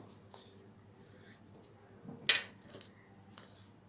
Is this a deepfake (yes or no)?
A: no